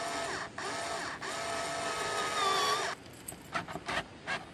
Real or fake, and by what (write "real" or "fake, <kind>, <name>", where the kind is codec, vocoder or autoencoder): real